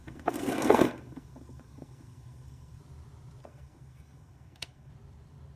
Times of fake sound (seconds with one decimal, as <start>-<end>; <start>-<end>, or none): 0.0-2.8; 3.4-4.9